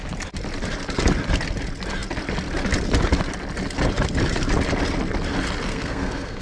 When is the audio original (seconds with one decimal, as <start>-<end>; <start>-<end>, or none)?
0.0-5.7